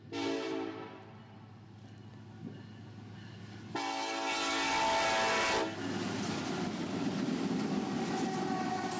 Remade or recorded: recorded